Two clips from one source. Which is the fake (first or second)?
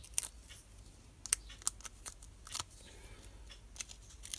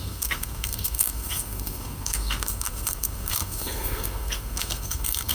second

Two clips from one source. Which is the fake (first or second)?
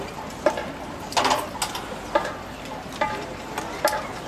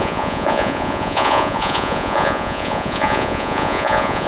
second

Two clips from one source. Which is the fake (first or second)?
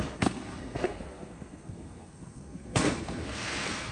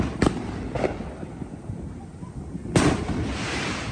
first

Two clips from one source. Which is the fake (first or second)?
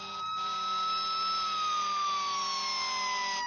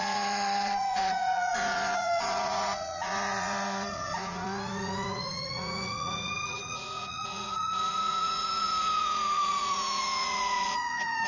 second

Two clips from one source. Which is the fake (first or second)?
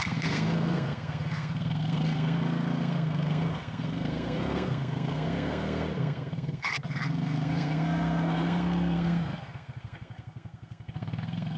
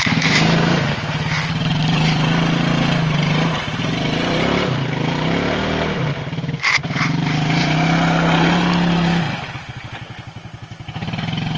first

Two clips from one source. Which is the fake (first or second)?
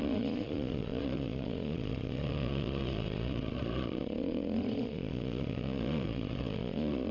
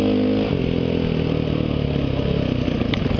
first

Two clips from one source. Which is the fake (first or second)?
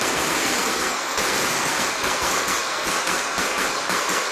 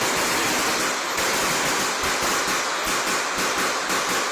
first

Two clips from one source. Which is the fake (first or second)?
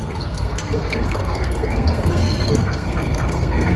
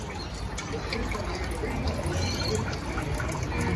first